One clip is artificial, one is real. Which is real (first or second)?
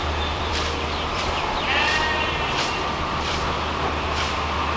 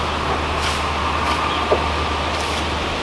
second